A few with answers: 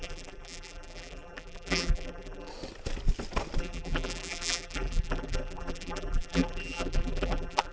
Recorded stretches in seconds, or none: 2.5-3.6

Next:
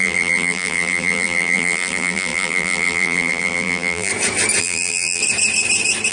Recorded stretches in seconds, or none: 4.1-4.6; 5.2-6.1

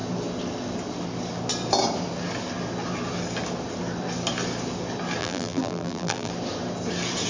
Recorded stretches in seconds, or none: 0.0-5.2; 6.3-7.3

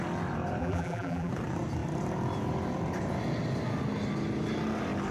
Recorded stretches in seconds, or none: 0.0-0.6; 1.3-5.1

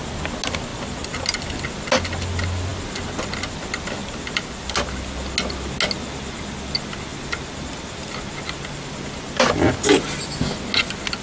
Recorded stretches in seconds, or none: 0.0-0.7; 1.6-11.2